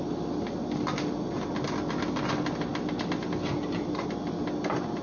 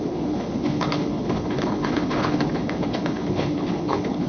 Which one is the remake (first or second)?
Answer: second